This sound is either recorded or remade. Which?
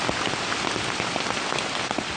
recorded